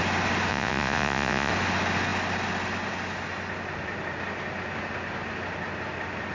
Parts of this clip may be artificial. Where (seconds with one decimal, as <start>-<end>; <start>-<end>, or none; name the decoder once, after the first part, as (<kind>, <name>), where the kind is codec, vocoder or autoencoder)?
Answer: 0.5-1.5 (vocoder, Vocos)